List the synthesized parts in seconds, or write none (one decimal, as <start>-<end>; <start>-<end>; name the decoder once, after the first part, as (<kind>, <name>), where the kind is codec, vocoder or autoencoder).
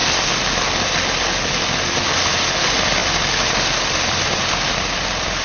2.5-5.4 (vocoder, BigVGAN v2)